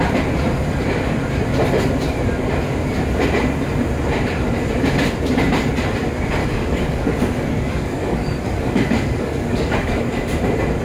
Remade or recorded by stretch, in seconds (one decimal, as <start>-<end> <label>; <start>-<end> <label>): 0.0-6.4 recorded; 6.4-10.1 remade; 10.1-10.8 recorded